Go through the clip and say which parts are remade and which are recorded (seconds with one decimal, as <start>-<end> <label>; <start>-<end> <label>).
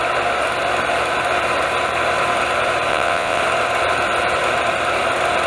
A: 0.0-2.9 recorded; 2.9-3.4 remade; 3.4-5.5 recorded